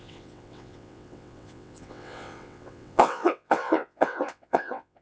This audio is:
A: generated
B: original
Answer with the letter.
A